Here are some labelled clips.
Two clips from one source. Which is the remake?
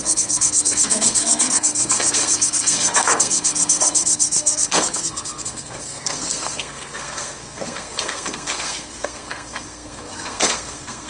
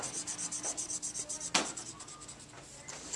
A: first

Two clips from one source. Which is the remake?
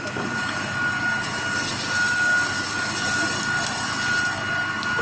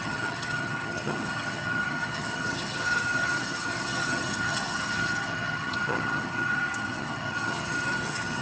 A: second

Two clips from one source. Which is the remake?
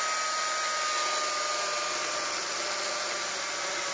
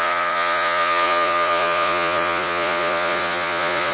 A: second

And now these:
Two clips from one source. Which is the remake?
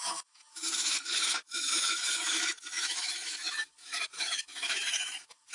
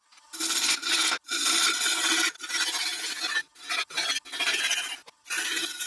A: first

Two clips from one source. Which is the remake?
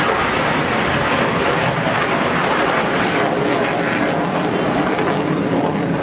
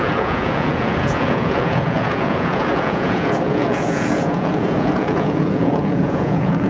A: second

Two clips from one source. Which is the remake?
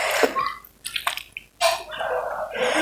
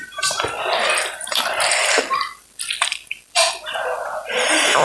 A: second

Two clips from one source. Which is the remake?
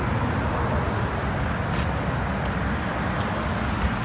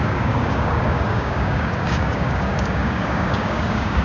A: second